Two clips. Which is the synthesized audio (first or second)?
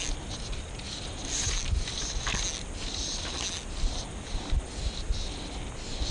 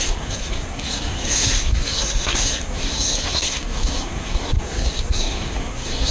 second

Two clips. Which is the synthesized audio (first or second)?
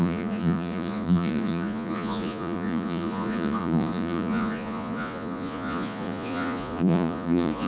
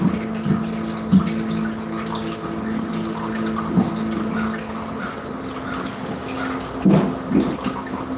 first